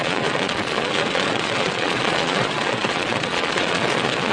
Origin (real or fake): fake